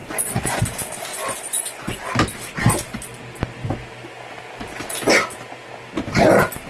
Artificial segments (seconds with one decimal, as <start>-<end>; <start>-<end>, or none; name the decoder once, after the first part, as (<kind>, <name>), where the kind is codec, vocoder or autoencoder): 0.0-0.6 (vocoder, Vocos); 1.1-2.1